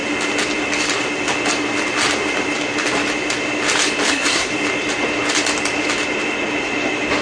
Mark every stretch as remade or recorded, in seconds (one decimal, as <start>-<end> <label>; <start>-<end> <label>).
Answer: 0.0-4.1 recorded; 4.1-4.5 remade; 4.5-7.2 recorded